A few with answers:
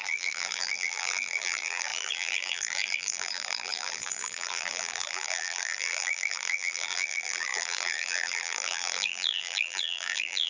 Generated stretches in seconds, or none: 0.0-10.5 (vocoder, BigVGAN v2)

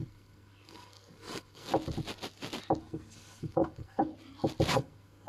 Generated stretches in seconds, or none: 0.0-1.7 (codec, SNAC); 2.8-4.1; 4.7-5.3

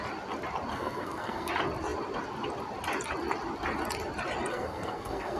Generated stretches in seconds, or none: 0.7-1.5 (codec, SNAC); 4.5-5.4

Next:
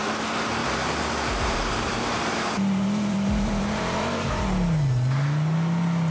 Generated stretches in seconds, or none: 0.6-4.3 (vocoder, BigVGAN v2)

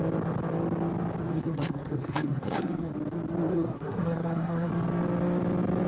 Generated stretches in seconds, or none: 1.3-2.9 (codec, SNAC); 3.5-4.7